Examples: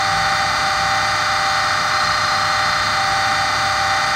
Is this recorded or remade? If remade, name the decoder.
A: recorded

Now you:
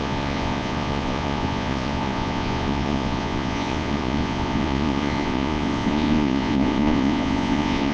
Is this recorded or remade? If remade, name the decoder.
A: remade, vocoder, Vocos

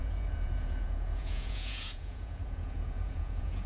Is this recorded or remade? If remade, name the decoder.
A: remade, vocoder, Vocos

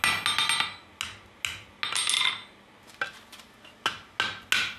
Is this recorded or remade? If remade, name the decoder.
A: recorded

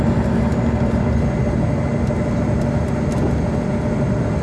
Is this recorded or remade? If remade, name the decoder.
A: recorded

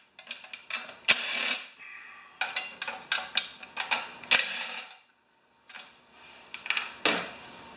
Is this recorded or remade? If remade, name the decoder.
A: recorded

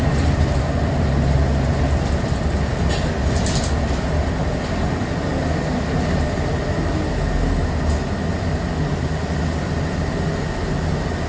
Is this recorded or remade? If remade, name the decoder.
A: recorded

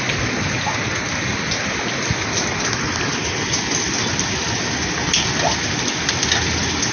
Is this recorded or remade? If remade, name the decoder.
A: recorded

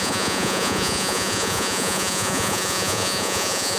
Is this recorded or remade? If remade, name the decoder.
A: remade, vocoder, Vocos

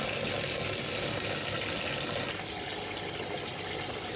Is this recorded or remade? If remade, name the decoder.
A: recorded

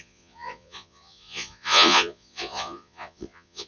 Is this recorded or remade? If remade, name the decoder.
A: remade, vocoder, Vocos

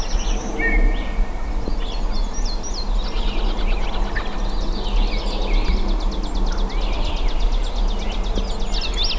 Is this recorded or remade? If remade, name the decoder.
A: recorded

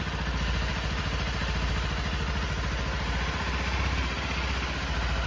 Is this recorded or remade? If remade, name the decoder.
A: recorded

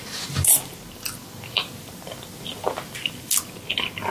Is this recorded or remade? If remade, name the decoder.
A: recorded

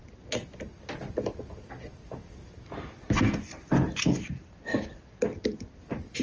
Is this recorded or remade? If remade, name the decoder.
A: recorded